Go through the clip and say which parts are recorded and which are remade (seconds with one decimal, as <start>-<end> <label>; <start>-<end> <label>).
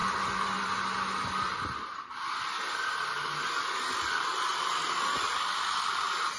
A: 0.0-6.4 recorded